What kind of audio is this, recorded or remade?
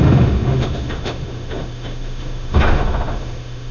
remade